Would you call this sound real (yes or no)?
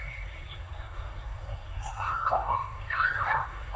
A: no